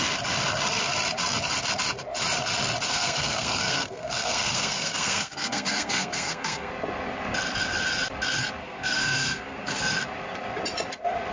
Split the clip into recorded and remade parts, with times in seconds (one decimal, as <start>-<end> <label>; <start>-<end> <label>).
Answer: 0.0-2.9 recorded; 2.9-6.7 remade; 6.7-8.6 recorded; 8.6-9.8 remade; 9.8-11.3 recorded